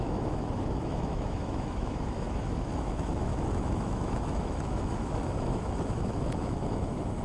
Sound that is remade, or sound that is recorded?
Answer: remade